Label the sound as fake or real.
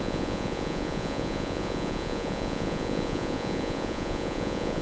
fake